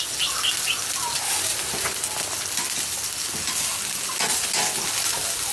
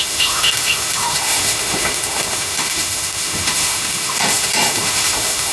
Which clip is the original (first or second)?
first